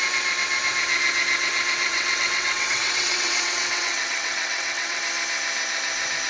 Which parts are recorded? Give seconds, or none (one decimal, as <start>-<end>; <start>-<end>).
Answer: 0.0-1.9; 5.0-6.3